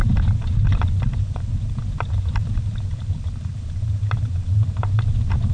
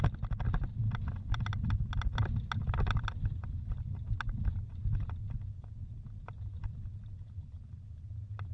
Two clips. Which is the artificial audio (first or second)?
first